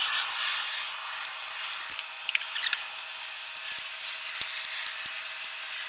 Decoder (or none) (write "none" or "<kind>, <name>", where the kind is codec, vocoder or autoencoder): none